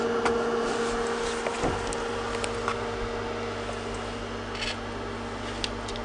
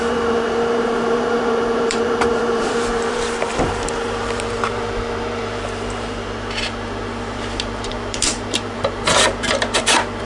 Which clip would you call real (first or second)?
first